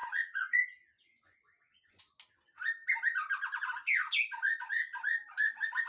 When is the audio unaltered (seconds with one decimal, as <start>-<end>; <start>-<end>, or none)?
2.0-5.9